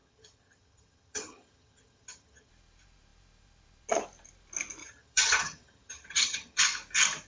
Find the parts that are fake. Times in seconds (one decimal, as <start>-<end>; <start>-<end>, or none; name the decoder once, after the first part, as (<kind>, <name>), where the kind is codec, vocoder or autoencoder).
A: 0.0-2.5 (vocoder, HiFi-GAN); 4.8-6.6